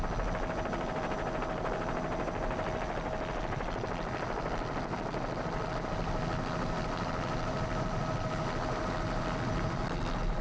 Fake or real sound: real